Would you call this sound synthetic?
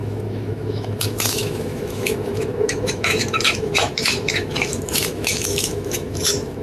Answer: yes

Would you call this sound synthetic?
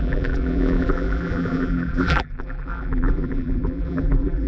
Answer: yes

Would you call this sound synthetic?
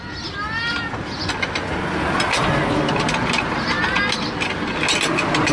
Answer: no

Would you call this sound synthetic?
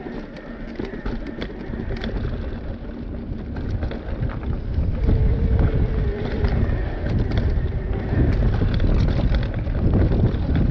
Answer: no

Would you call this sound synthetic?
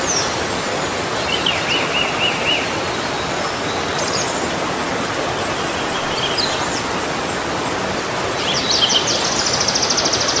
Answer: no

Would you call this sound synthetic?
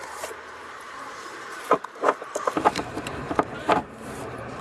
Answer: yes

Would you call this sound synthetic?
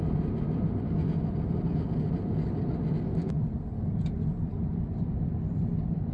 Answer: no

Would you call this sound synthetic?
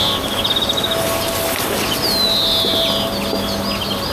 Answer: no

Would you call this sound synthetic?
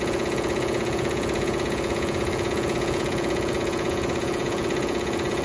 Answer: yes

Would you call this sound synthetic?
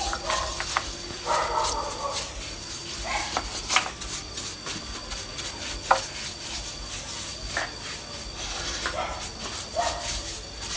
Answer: no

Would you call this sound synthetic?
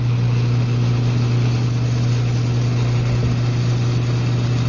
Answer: no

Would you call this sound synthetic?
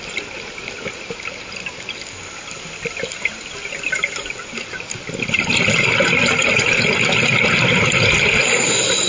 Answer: no